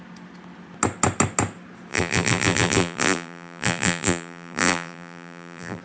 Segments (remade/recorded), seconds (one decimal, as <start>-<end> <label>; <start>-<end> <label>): 0.0-1.9 recorded; 1.9-5.8 remade